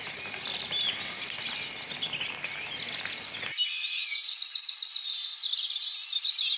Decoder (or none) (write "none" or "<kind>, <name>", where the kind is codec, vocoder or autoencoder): none